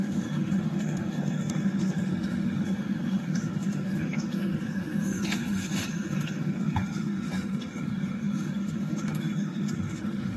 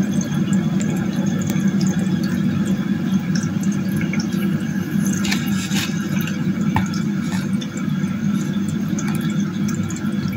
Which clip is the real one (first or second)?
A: second